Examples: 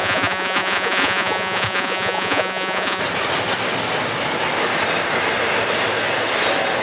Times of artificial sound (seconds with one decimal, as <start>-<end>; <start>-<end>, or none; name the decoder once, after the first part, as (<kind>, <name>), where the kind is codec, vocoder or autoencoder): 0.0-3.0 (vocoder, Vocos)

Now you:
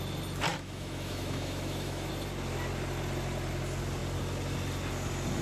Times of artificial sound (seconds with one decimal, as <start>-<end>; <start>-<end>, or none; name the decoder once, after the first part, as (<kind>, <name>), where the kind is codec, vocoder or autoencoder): 0.5-2.1 (autoencoder, DAC-VAE)

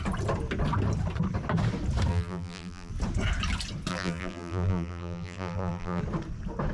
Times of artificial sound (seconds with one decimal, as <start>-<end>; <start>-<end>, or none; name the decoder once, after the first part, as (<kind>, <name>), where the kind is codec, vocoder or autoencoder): 2.1-2.9 (vocoder, BigVGAN v2); 3.9-6.0

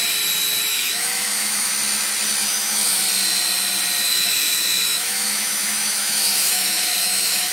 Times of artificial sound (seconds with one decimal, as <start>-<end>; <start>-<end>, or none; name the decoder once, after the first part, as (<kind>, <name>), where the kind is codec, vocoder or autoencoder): 0.7-1.7 (autoencoder, DAC-VAE); 2.4-3.0; 4.0-7.5